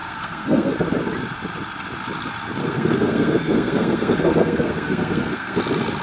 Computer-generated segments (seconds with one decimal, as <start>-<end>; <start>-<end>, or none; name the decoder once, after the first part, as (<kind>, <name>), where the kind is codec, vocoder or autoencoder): 0.0-0.7 (codec, SNAC); 2.6-5.6